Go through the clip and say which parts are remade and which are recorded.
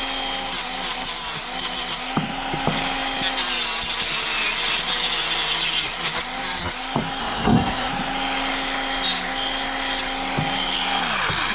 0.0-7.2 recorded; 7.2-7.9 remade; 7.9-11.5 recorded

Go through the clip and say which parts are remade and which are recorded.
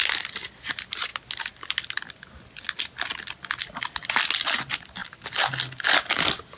0.0-6.6 recorded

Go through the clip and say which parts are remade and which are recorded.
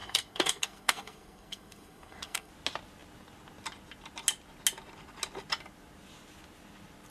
0.0-2.5 remade; 2.5-7.1 recorded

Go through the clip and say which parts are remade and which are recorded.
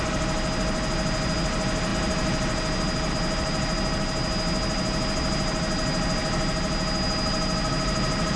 0.0-8.4 recorded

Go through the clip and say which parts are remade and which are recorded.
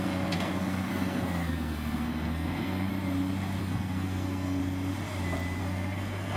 0.0-2.9 remade; 2.9-3.6 recorded; 3.6-4.6 remade; 4.6-5.6 recorded; 5.6-6.4 remade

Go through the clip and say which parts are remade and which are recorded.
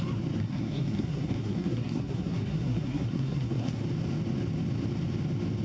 0.0-0.4 recorded; 0.4-3.8 remade; 3.8-5.6 recorded